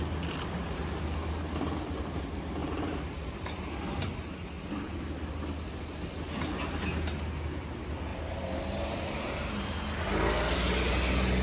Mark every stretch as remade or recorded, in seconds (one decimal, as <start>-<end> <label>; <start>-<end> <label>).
0.0-2.6 recorded; 2.6-3.6 remade; 3.6-8.1 recorded; 8.1-9.4 remade; 9.4-11.4 recorded